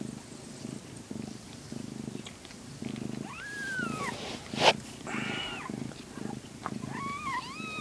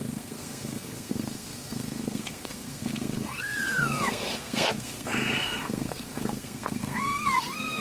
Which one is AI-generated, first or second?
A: second